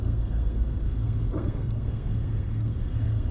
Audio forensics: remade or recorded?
remade